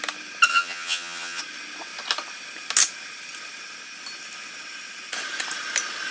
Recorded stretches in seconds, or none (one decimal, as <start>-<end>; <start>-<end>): 0.0-0.5; 1.4-6.1